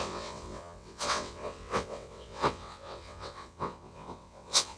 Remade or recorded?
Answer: remade